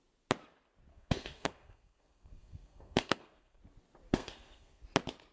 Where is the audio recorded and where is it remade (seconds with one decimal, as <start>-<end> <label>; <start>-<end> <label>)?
0.0-0.9 recorded; 0.9-3.6 remade; 3.6-4.1 recorded; 4.1-4.8 remade; 4.8-5.3 recorded